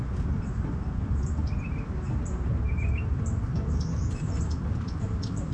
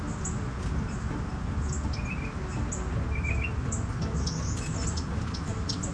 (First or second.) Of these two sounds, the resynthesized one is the first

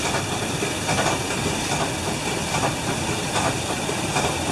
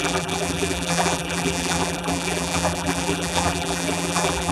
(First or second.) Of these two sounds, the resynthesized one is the second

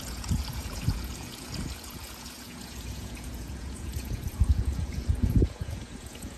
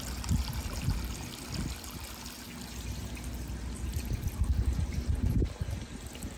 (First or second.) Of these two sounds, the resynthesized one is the first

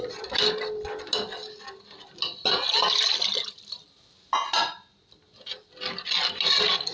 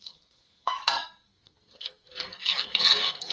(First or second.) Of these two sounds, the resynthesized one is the second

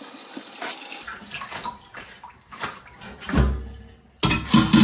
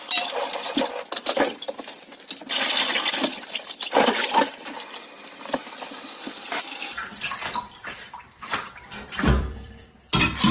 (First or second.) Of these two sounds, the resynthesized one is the second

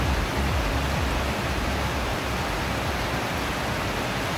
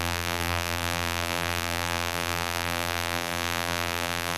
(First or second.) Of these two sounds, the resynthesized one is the second